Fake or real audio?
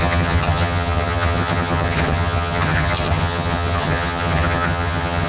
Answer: fake